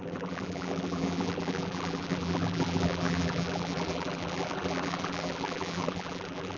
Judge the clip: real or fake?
fake